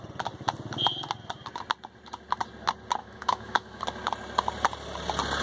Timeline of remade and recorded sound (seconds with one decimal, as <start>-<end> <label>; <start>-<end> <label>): 0.0-3.0 recorded; 3.0-3.8 remade; 3.8-5.4 recorded